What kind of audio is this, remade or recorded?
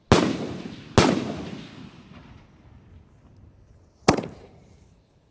recorded